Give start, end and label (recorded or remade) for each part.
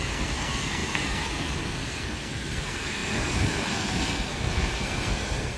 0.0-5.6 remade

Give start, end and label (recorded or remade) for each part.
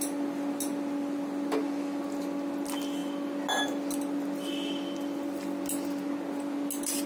0.0-7.1 recorded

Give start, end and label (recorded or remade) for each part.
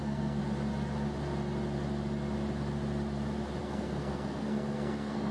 0.0-0.4 remade; 0.4-3.6 recorded; 3.6-5.3 remade